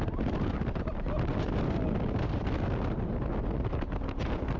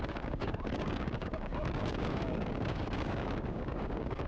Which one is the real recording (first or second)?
first